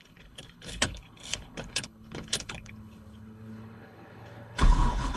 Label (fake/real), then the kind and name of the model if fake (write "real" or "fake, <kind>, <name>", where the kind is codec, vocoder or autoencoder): fake, codec, HILCodec